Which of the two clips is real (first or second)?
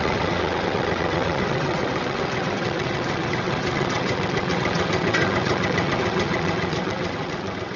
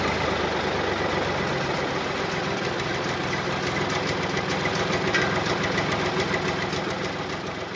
second